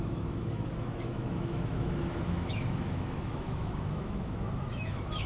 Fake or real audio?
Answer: fake